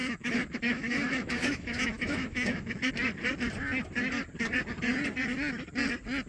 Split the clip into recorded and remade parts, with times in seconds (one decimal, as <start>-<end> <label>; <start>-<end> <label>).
0.0-2.9 remade; 2.9-6.3 recorded